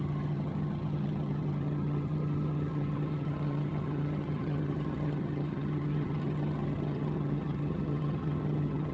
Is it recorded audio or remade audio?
remade